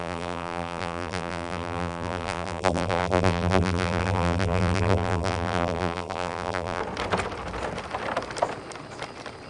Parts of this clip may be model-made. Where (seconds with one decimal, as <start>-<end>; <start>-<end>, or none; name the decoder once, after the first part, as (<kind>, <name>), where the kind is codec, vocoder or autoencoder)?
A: 0.0-6.8 (vocoder, BigVGAN v2)